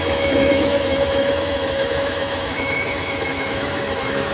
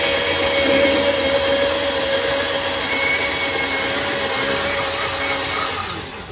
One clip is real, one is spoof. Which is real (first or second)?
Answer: second